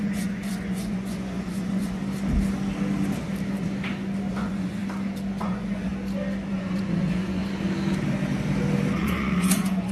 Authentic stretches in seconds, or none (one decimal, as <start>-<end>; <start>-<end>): 2.0-4.3; 4.8-5.4; 5.9-6.5; 7.4-9.0